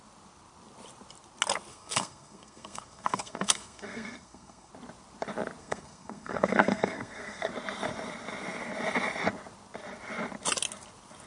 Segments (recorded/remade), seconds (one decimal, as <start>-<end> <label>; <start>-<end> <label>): 0.0-1.7 recorded; 1.7-4.7 remade; 4.7-5.6 recorded; 5.6-7.5 remade; 7.5-11.3 recorded